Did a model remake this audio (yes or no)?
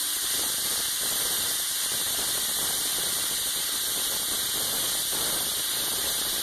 no